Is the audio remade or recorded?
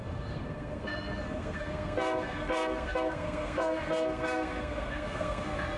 remade